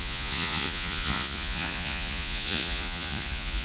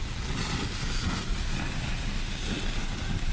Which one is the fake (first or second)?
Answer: first